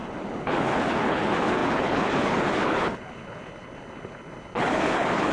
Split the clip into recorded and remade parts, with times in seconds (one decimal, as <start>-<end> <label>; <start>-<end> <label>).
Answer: 0.0-5.3 remade